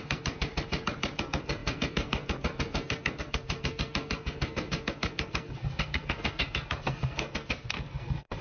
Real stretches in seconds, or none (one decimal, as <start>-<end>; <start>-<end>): 0.5-1.2